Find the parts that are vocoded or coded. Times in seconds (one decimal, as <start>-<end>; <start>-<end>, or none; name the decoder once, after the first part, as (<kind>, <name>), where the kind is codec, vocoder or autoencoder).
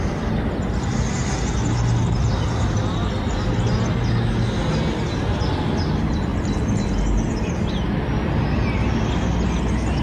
none